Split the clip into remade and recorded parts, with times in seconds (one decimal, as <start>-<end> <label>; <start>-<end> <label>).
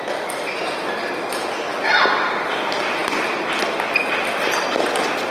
0.0-5.3 recorded